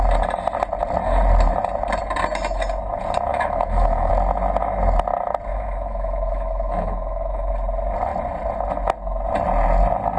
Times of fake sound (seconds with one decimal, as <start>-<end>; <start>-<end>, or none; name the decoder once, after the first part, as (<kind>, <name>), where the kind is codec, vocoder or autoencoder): 3.3-4.1 (autoencoder, DAC-VAE); 5.5-7.5